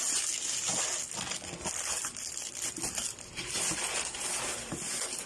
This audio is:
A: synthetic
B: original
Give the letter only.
B